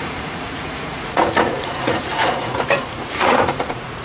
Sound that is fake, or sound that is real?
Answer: fake